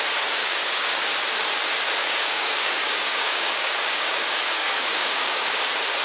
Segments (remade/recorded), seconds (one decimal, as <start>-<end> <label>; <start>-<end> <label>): 0.0-0.4 recorded; 0.4-1.0 remade; 1.0-2.0 recorded; 2.0-5.6 remade; 5.6-6.0 recorded